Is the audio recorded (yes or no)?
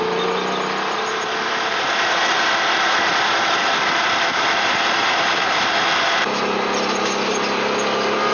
yes